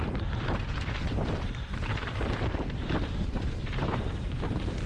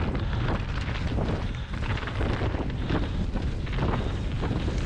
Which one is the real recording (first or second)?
second